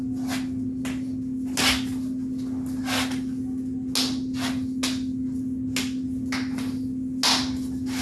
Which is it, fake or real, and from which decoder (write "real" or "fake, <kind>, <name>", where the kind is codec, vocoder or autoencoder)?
real